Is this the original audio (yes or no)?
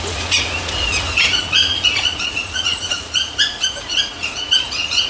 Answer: no